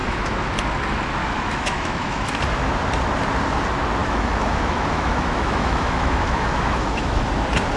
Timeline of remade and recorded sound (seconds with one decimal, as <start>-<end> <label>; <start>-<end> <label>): 0.0-0.5 remade; 0.5-1.2 recorded; 1.2-2.4 remade; 2.4-4.0 recorded; 4.0-7.3 remade; 7.3-7.8 recorded